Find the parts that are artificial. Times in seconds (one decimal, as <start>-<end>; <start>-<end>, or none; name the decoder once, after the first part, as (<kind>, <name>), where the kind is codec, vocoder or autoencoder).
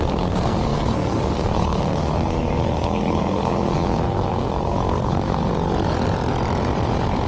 0.0-5.5 (codec, SNAC)